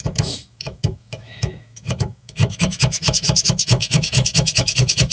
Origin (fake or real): fake